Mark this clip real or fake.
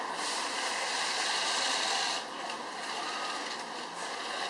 real